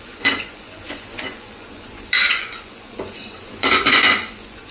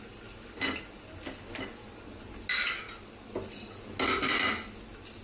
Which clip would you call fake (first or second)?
first